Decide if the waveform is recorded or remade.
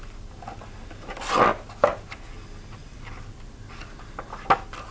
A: recorded